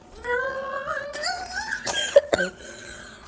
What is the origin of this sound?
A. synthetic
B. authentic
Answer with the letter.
A